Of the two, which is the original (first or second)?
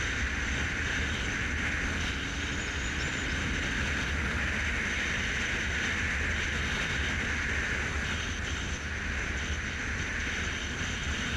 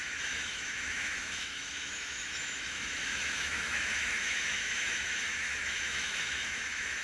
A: first